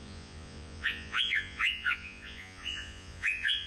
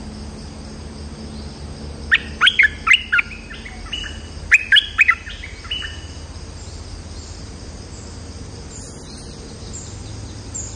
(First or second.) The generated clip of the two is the first